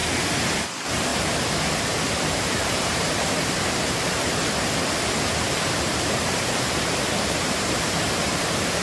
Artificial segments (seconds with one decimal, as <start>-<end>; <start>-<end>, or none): 0.6-1.1; 2.3-4.4; 6.2-8.8

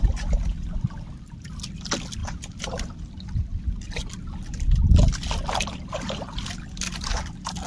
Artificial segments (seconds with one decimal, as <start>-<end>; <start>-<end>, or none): 2.2-2.8

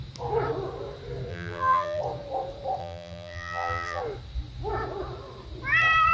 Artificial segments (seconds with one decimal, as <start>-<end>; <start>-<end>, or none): 1.3-2.0; 2.8-4.0